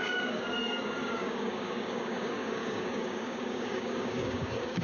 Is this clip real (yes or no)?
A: no